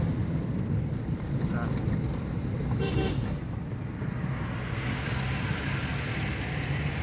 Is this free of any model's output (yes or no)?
no